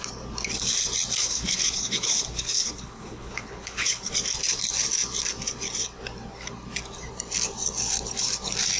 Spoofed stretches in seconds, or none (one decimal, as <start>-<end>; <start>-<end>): 1.2-4.1